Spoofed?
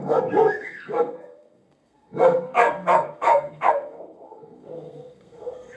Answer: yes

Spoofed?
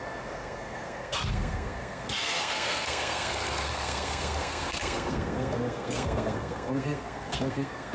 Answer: yes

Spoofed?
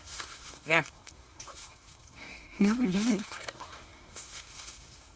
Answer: yes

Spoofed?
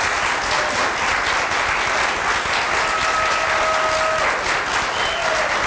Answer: no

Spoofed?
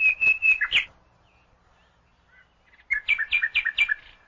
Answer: no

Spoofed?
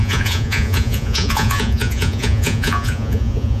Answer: yes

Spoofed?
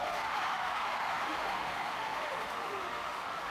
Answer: yes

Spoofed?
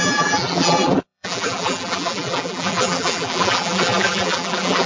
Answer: yes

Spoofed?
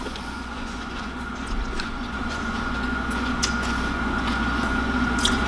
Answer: yes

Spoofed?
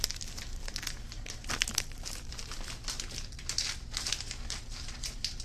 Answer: yes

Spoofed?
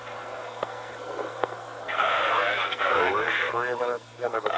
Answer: yes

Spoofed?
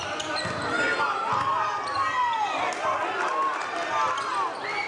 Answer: no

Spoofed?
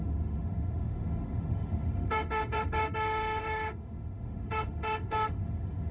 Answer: yes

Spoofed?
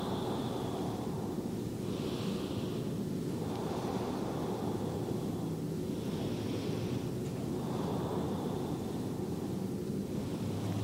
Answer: no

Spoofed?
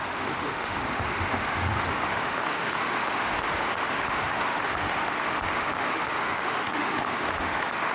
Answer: yes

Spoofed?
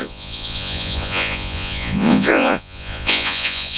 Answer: yes